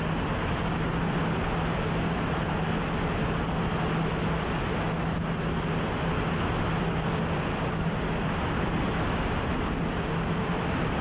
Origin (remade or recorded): recorded